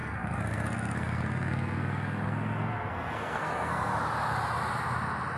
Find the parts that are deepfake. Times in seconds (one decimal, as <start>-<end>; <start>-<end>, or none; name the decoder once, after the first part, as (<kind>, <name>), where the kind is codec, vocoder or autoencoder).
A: 0.0-3.9 (codec, SNAC)